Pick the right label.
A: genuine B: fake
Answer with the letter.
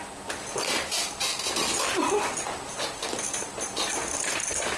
A